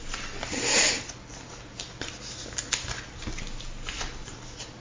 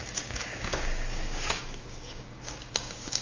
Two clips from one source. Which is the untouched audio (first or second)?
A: first